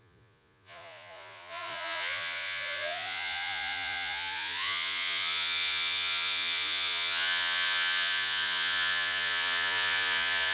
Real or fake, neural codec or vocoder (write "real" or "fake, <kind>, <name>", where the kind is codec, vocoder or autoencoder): fake, vocoder, Vocos